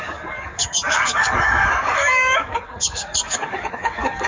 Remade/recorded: remade